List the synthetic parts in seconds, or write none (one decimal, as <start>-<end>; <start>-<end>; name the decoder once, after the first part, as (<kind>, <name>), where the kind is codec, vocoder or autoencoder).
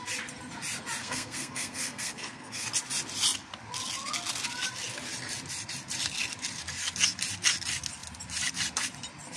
1.0-2.7 (codec, SNAC)